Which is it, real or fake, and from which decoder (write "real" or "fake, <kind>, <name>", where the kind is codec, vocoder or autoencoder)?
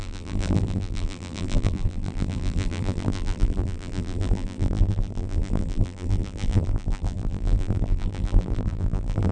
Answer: fake, vocoder, BigVGAN v2